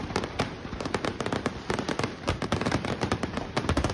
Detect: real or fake fake